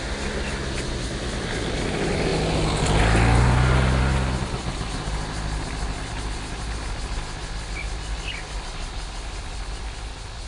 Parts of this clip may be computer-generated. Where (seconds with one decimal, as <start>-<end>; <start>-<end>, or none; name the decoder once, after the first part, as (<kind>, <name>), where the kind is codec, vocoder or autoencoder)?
none